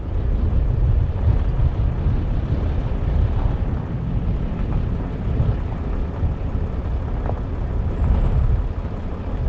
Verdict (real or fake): real